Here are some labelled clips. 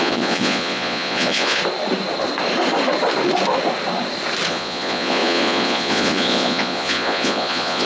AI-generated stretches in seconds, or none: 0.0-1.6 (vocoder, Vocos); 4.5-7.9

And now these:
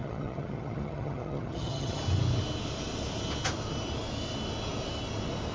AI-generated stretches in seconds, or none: 0.0-2.0 (vocoder, HiFi-GAN)

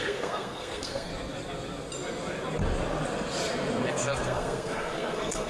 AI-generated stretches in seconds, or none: 0.0-1.1 (codec, SNAC); 3.9-5.5

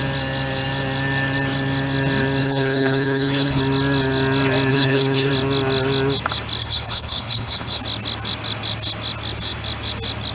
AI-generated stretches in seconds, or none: 2.4-3.6 (codec, HILCodec); 4.7-5.3; 6.6-7.8

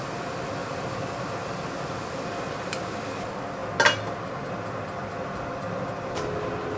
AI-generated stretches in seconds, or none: none

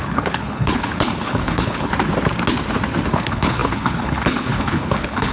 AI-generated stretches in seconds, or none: 0.0-1.9 (codec, HILCodec); 3.1-5.3